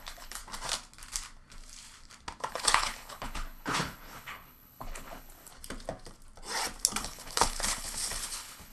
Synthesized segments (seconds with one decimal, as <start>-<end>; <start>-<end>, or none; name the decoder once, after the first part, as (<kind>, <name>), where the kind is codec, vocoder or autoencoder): 0.0-0.4 (codec, HILCodec); 2.5-5.5; 7.0-8.7